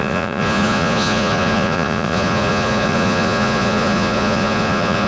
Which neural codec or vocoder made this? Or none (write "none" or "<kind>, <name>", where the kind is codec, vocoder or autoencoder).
vocoder, Vocos